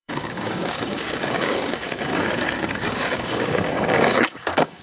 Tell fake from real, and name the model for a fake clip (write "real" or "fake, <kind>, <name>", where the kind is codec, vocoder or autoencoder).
fake, codec, DAC